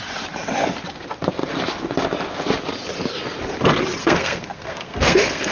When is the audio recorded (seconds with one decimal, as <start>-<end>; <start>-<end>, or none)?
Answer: 0.0-4.0